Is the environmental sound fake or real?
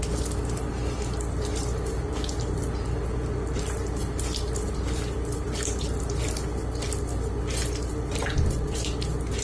real